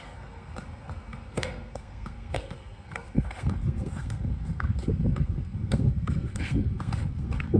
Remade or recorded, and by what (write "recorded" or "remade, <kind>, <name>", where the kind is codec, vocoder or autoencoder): remade, codec, SNAC